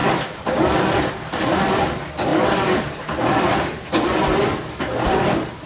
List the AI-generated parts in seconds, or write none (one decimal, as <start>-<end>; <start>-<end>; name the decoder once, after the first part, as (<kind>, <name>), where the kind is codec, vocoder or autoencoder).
0.0-1.4 (vocoder, BigVGAN v2)